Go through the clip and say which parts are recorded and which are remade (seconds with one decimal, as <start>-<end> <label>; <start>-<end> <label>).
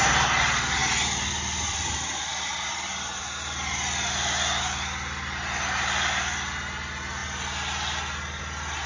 0.0-8.9 recorded